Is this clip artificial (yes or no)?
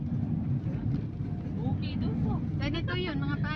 no